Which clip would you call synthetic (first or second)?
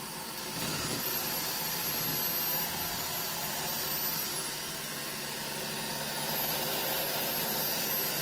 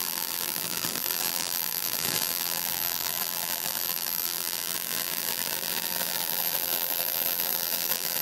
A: second